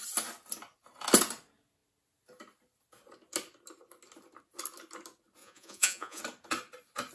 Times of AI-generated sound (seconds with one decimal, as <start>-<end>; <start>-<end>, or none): 5.4-6.2